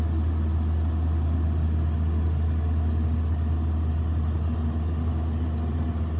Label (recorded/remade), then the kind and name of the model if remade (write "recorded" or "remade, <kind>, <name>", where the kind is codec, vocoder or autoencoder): recorded